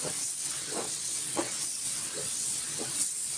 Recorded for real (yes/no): no